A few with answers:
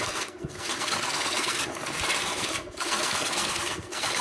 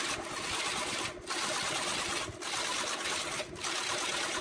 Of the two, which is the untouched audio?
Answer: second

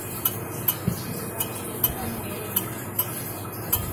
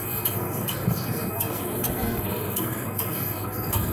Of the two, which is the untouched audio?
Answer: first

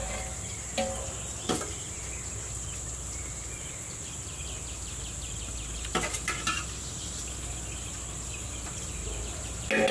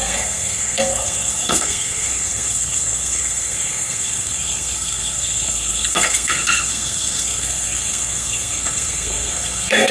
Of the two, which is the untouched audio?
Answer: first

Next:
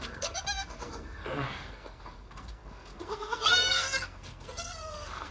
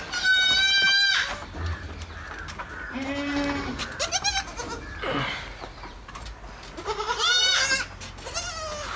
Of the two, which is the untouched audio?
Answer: second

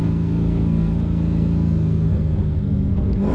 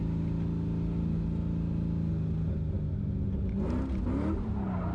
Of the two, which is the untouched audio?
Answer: second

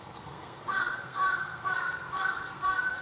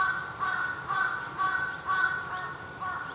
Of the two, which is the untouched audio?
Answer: second